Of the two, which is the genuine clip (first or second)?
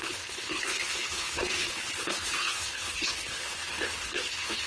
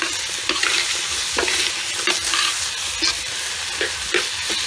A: second